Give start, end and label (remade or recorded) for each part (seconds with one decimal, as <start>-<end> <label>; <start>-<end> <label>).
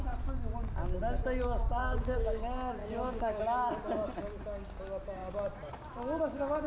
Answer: 0.0-1.8 recorded; 1.8-2.4 remade; 2.4-2.8 recorded; 2.8-3.4 remade; 3.4-6.7 recorded